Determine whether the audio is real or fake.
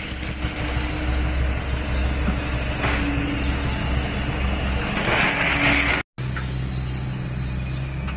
real